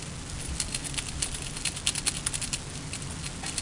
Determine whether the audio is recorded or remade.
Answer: recorded